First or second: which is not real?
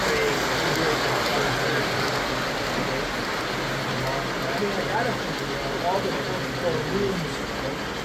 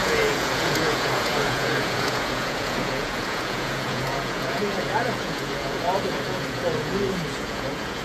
second